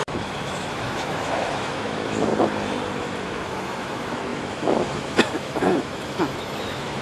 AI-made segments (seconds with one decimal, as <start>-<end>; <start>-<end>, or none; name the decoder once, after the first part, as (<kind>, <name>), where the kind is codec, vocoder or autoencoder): 0.0-2.3 (autoencoder, DAC-VAE); 3.0-7.0